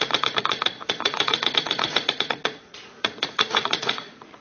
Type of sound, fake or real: fake